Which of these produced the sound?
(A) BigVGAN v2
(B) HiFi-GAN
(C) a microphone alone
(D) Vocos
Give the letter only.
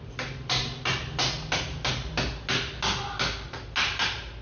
C